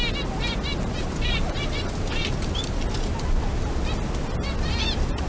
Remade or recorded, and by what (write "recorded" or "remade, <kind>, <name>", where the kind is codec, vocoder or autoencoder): recorded